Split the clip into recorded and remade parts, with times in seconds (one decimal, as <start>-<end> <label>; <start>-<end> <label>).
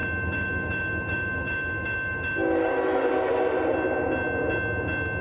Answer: 0.0-3.1 remade; 3.1-5.2 recorded